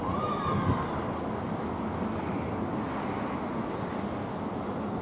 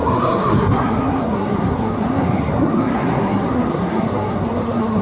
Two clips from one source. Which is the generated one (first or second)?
second